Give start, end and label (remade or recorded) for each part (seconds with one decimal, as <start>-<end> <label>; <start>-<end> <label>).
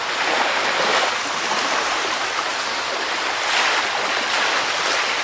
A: 0.0-5.2 recorded